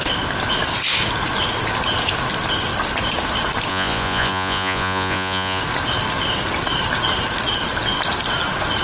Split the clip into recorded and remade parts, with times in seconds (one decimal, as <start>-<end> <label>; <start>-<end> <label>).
0.0-3.7 recorded; 3.7-5.6 remade; 5.6-8.8 recorded